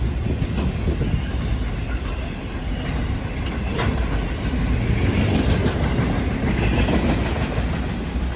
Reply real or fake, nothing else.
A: real